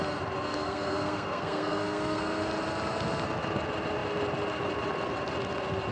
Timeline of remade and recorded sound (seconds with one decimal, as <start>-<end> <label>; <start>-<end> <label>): 0.0-0.5 recorded; 0.5-2.4 remade; 2.4-5.9 recorded